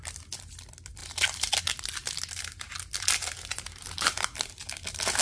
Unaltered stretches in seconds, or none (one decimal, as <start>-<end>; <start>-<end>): 0.0-1.0; 1.6-3.5; 4.7-5.2